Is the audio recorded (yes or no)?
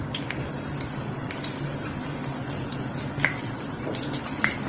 yes